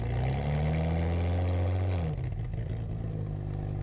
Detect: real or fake real